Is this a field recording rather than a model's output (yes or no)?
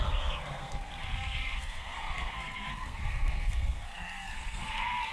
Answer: no